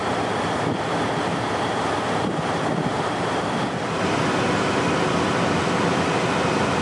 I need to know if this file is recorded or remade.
remade